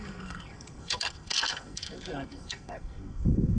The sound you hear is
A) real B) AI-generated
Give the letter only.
B